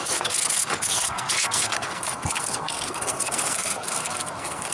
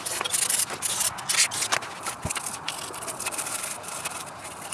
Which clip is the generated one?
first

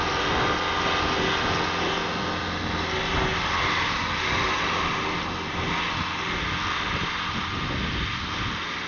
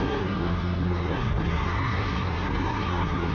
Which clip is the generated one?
second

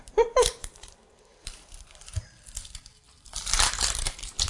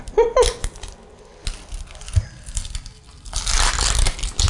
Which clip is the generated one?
first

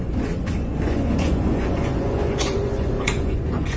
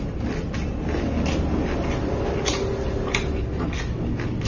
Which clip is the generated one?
first